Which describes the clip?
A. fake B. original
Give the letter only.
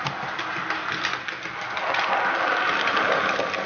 B